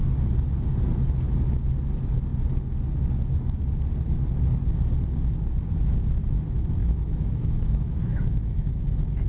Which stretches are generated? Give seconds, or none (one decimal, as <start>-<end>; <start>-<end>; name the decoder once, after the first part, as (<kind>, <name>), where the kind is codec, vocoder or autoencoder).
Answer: 6.8-8.8 (autoencoder, DAC-VAE)